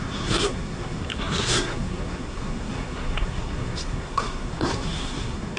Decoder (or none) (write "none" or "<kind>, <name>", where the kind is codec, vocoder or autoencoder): codec, SNAC